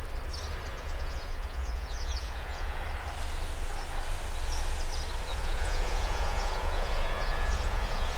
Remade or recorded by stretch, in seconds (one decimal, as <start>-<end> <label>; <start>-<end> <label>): 0.0-0.7 recorded; 0.7-2.8 remade; 2.8-5.3 recorded; 5.3-8.2 remade